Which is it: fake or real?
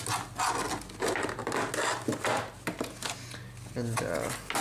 real